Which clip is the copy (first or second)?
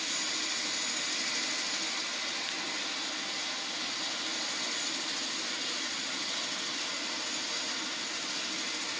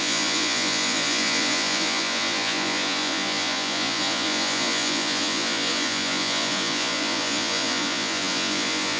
second